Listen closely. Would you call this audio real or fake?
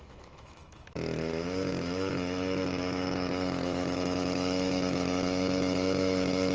fake